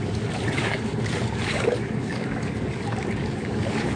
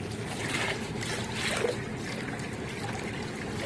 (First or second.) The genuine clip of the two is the second